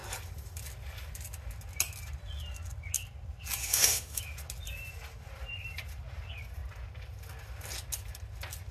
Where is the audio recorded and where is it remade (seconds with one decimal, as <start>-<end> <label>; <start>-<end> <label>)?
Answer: 0.0-3.6 recorded; 3.6-4.2 remade; 4.2-8.7 recorded